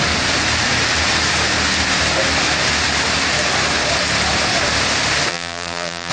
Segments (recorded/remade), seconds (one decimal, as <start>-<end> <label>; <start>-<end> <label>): 0.0-5.3 recorded; 5.3-6.1 remade